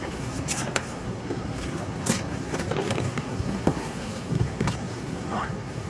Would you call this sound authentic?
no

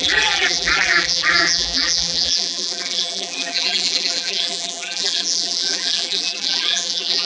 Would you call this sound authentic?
no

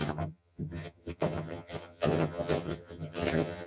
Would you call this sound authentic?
no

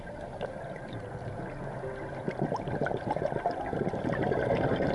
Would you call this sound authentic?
yes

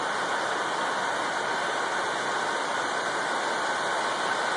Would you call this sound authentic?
yes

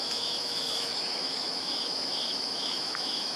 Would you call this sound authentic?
no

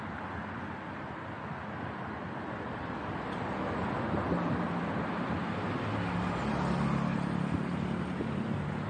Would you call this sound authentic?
yes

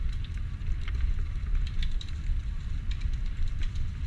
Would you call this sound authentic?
yes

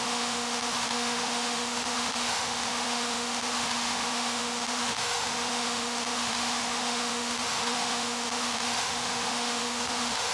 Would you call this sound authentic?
no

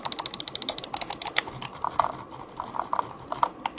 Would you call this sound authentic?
yes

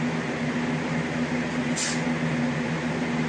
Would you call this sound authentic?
yes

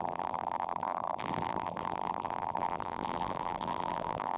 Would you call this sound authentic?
no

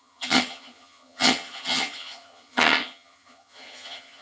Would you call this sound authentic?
no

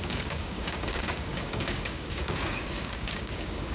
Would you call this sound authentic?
no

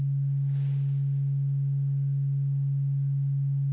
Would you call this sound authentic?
yes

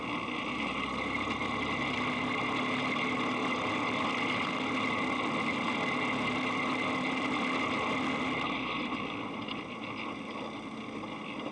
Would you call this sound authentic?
yes